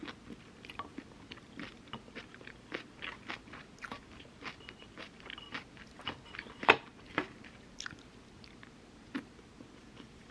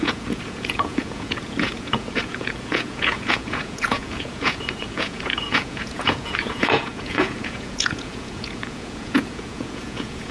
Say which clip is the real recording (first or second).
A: first